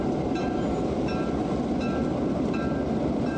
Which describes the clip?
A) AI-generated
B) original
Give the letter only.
B